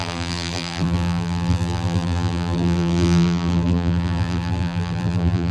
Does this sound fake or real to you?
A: fake